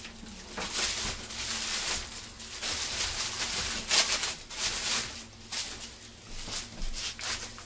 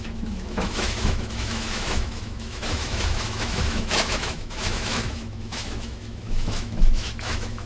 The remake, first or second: second